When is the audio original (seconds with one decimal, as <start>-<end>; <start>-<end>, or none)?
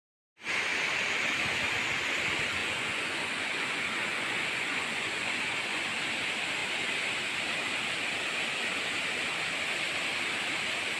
0.0-2.6; 5.9-11.0